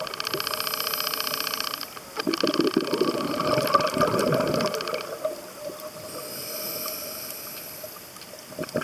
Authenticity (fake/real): real